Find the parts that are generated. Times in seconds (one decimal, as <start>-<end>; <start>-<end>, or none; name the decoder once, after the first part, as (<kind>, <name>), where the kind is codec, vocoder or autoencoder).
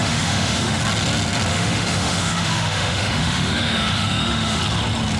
0.0-0.8 (autoencoder, DAC-VAE); 1.5-4.6